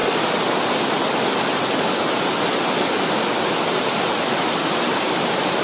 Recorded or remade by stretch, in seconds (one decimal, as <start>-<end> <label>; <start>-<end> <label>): 0.0-3.4 recorded; 3.4-5.6 remade